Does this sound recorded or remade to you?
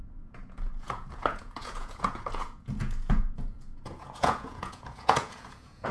remade